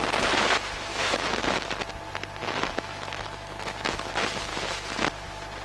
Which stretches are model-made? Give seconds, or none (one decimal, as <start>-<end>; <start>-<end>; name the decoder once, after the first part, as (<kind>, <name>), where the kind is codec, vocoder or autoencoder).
0.9-1.4 (autoencoder, DAC-VAE); 2.4-4.1; 4.5-5.1